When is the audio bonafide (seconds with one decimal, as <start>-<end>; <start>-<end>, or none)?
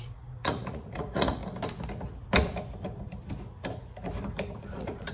1.4-4.5